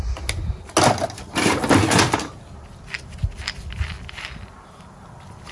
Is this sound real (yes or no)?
yes